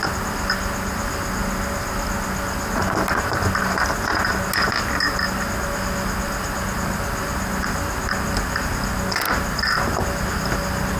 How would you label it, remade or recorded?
recorded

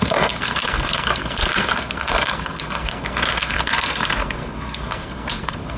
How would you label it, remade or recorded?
remade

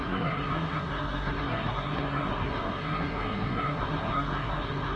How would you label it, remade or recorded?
remade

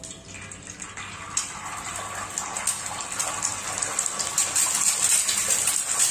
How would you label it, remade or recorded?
recorded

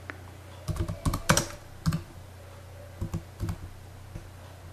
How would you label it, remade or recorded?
recorded